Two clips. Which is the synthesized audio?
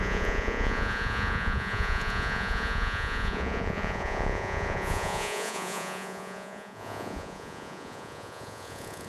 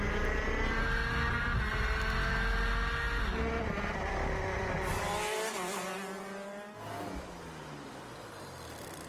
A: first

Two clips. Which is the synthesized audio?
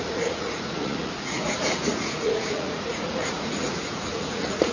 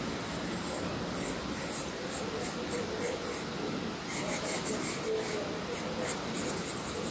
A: first